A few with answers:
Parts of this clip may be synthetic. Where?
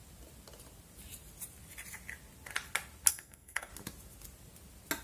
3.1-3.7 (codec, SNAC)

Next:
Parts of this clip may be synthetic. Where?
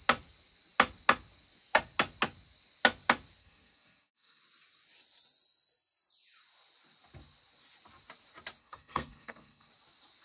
3.4-4.4 (codec, SNAC); 8.6-9.7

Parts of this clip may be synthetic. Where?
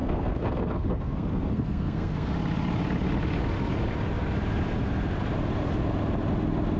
0.0-2.3 (codec, SNAC)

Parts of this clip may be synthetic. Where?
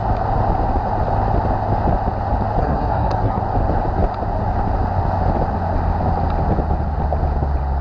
2.6-3.4 (codec, SNAC)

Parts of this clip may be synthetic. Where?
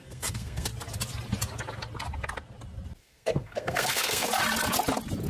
0.0-0.7 (codec, SNAC); 3.0-4.3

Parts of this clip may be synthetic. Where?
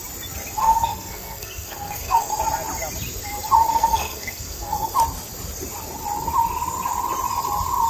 0.6-2.3 (codec, SNAC); 3.7-4.9